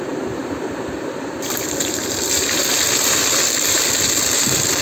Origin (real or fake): fake